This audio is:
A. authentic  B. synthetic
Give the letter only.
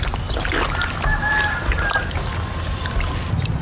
A